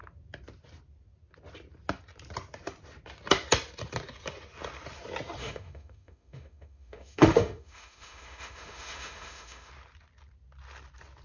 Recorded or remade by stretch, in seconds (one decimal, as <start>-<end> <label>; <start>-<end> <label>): 0.0-5.4 recorded; 5.4-9.7 remade; 9.7-11.2 recorded